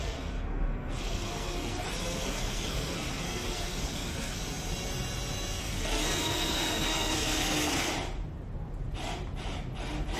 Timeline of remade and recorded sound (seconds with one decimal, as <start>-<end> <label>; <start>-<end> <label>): 0.0-4.4 remade; 4.4-5.6 recorded; 5.6-7.9 remade; 7.9-10.2 recorded